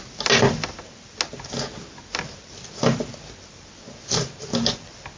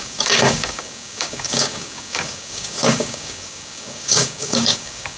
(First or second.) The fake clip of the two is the second